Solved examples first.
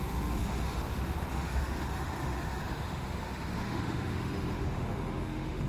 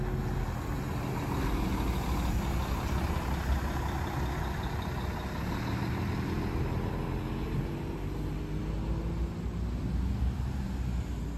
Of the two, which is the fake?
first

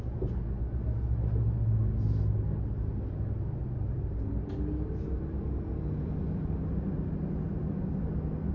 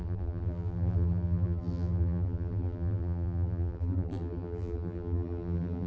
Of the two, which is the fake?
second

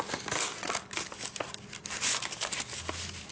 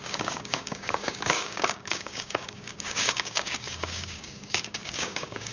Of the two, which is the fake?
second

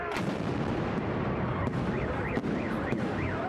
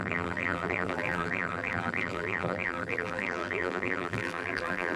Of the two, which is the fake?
second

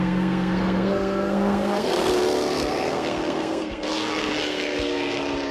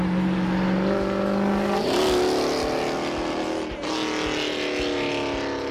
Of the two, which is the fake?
first